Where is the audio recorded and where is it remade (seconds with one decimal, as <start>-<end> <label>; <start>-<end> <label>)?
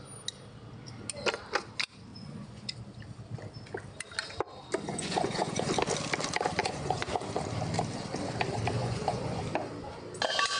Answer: 0.0-2.1 recorded; 2.1-2.7 remade; 2.7-4.9 recorded; 4.9-5.7 remade; 5.7-6.6 recorded; 6.6-7.1 remade; 7.1-8.8 recorded; 8.8-9.4 remade; 9.4-10.6 recorded